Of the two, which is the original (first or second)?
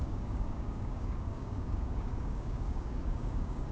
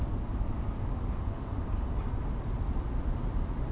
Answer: second